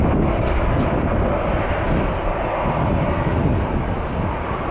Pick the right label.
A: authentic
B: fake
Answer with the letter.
A